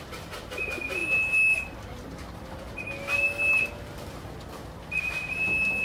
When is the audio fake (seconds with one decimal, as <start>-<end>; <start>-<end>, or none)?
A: none